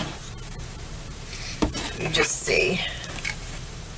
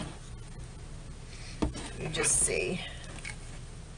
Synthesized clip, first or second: first